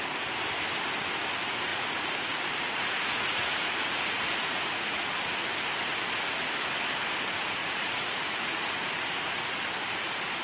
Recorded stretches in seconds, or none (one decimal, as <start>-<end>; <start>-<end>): 0.0-1.7; 5.3-7.6; 9.6-10.4